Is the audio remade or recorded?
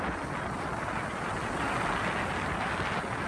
recorded